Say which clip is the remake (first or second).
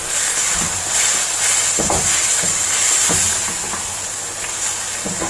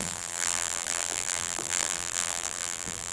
second